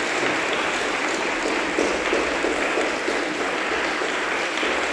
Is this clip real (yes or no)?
yes